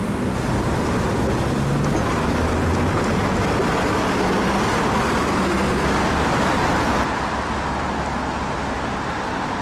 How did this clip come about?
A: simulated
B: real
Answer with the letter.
B